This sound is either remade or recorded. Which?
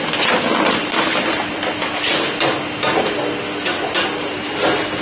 recorded